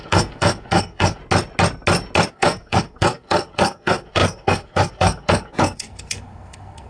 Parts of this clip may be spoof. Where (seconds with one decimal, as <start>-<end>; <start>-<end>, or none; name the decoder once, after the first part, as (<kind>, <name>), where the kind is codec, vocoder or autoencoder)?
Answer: 0.0-1.2 (codec, SNAC); 2.3-6.9